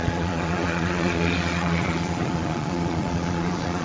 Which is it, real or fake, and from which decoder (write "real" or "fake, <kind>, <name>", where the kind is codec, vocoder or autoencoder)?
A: fake, vocoder, Vocos